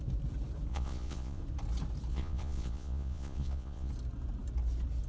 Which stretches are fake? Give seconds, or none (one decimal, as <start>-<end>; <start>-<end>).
0.7-1.4; 2.1-3.9